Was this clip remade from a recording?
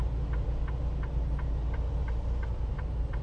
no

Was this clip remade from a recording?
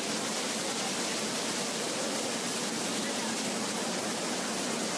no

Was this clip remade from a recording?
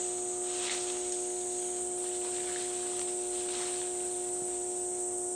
no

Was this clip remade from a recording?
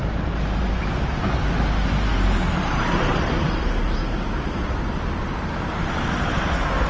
yes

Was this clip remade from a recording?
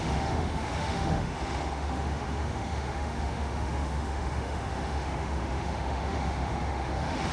yes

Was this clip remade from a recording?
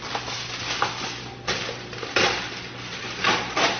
no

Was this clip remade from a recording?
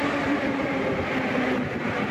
yes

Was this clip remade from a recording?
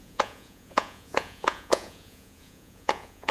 yes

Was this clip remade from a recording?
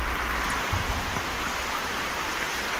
no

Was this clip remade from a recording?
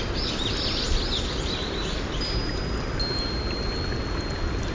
no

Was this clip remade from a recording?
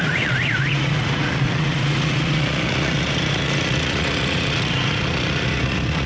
yes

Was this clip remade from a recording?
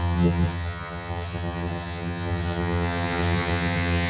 yes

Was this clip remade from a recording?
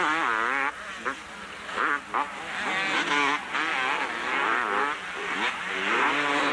no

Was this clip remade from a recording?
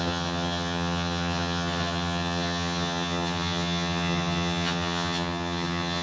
yes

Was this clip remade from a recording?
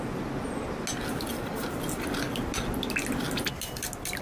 no